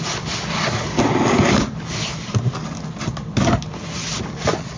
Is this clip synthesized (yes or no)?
no